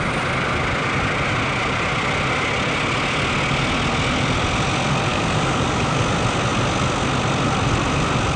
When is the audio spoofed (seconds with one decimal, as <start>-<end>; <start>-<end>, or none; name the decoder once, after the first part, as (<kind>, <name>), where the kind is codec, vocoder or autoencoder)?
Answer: 5.1-6.0 (codec, DAC)